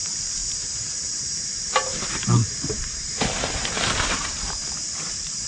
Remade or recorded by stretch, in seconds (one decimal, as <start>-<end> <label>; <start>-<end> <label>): 0.0-1.9 recorded; 1.9-4.4 remade; 4.4-5.5 recorded